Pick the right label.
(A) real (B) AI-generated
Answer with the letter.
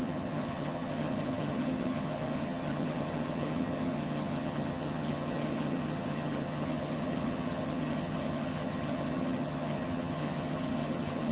B